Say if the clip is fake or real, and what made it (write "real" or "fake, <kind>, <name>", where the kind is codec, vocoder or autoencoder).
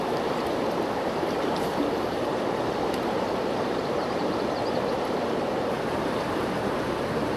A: fake, vocoder, BigVGAN v2